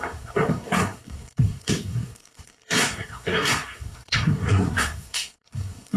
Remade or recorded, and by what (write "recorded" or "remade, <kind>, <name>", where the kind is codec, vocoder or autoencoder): remade, codec, SNAC